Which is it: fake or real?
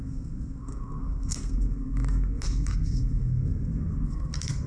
fake